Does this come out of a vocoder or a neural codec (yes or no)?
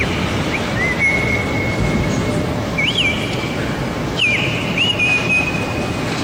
no